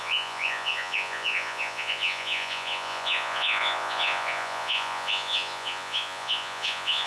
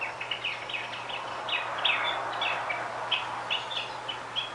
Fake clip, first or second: first